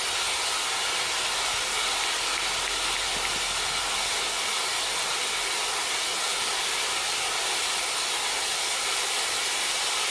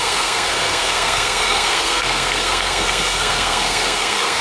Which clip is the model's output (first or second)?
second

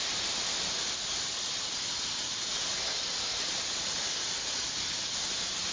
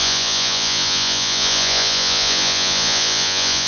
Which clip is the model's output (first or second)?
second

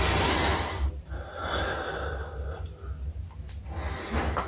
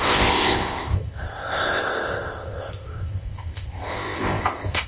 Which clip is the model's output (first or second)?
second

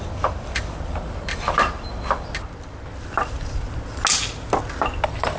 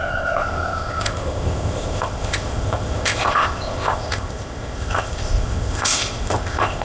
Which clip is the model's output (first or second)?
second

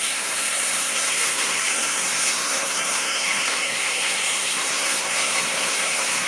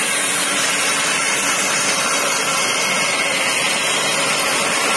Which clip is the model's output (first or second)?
first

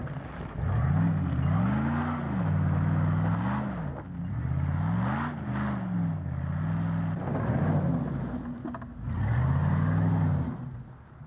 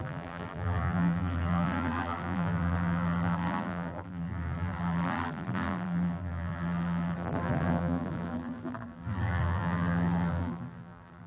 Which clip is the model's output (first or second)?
second